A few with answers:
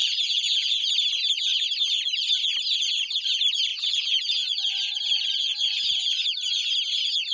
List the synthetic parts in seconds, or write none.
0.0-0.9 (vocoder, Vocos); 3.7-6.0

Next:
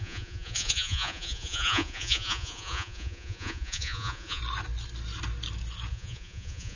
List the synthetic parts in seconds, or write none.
0.0-4.4 (vocoder, Vocos); 5.9-6.8

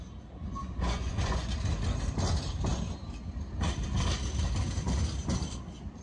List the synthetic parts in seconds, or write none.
0.6-1.5 (vocoder, Vocos)

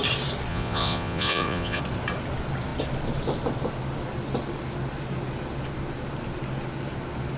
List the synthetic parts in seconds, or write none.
0.5-1.8 (vocoder, Vocos)

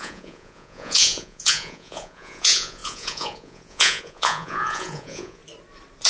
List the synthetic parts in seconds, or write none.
0.0-5.4 (vocoder, Vocos)

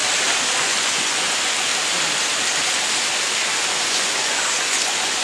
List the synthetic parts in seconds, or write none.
0.6-1.7 (vocoder, Vocos); 3.7-5.2